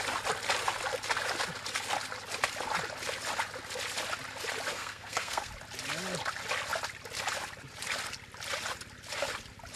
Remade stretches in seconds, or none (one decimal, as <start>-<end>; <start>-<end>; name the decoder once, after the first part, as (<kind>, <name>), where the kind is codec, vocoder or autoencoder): 4.7-5.5 (codec, SNAC)